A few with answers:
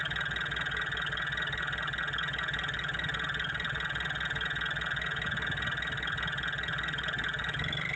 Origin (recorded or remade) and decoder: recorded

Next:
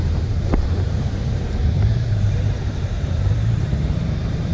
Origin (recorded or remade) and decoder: remade, vocoder, BigVGAN v2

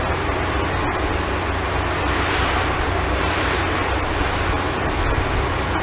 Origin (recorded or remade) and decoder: recorded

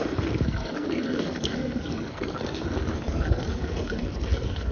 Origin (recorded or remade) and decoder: remade, codec, SNAC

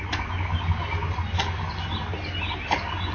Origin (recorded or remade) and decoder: recorded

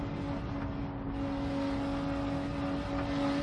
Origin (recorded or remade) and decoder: recorded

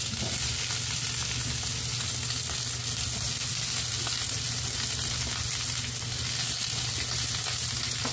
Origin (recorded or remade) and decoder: recorded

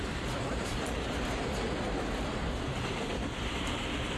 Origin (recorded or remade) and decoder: remade, vocoder, BigVGAN v2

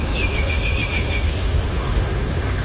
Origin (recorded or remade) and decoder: remade, autoencoder, DAC-VAE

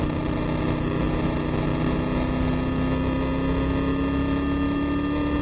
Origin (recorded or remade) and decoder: recorded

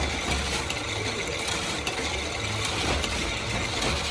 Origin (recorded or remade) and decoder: recorded